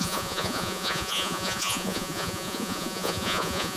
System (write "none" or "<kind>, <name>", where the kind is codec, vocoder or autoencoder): vocoder, Vocos